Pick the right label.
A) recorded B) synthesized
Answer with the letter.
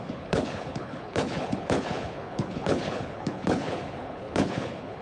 B